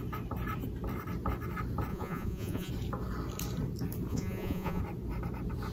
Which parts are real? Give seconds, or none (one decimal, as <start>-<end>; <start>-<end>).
0.0-1.9; 2.7-4.1; 4.8-5.7